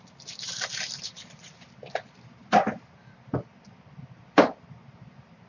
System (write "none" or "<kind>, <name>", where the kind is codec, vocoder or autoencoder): vocoder, BigVGAN v2